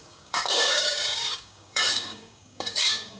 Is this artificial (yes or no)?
yes